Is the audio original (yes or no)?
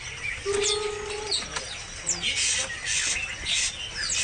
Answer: yes